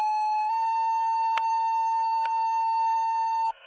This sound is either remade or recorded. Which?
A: remade